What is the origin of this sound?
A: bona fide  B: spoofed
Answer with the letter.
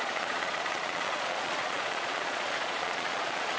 B